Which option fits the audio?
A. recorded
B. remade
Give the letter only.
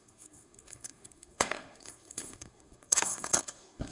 B